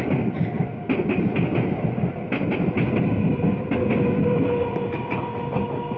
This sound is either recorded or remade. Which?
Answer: recorded